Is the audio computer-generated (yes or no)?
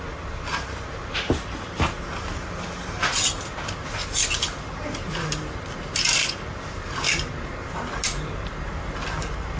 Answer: no